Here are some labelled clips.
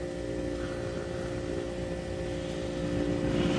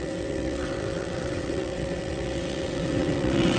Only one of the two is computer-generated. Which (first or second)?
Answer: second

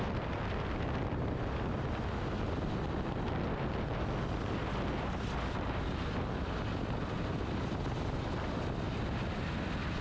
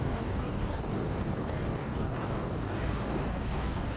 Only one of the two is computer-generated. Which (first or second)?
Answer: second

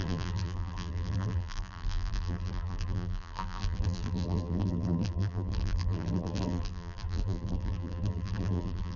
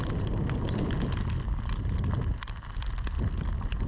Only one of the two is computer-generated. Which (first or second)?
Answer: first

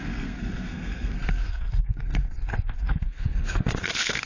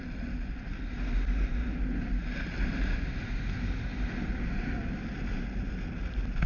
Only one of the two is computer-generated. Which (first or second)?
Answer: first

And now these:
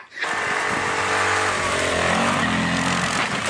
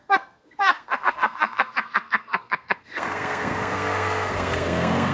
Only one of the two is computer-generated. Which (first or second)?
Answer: second